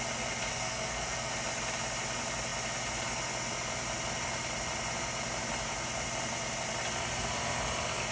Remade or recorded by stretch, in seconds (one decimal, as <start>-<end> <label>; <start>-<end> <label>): 0.0-0.5 recorded; 0.5-1.3 remade; 1.3-8.1 recorded